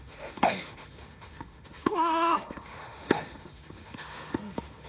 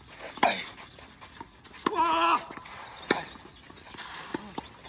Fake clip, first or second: first